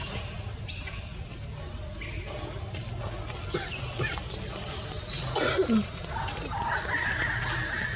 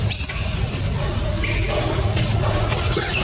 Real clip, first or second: first